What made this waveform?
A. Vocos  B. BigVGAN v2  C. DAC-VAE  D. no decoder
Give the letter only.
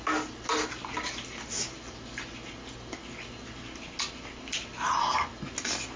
D